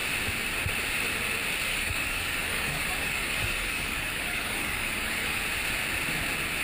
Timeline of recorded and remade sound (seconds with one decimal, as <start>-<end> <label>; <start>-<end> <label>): 0.0-1.7 recorded; 1.7-5.4 remade; 5.4-6.6 recorded